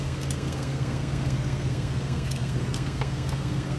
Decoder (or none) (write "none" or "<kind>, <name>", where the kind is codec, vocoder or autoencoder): codec, SNAC